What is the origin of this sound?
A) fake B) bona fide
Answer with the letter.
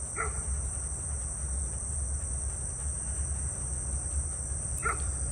B